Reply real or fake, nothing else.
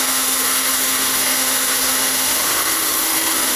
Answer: fake